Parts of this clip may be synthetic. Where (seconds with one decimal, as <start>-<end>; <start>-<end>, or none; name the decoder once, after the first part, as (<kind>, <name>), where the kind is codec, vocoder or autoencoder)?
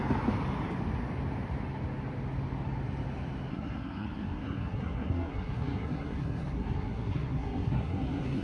3.5-8.4 (codec, SNAC)